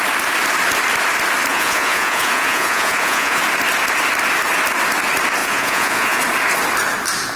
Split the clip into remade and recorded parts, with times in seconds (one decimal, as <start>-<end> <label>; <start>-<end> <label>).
0.0-1.5 recorded; 1.5-3.4 remade; 3.4-5.4 recorded; 5.4-6.2 remade; 6.2-7.4 recorded